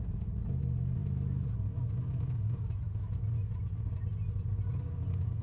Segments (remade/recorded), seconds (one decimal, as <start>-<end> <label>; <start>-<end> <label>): 0.0-5.4 recorded